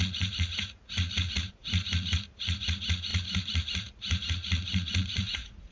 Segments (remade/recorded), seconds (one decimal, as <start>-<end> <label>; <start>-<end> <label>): 0.0-5.7 remade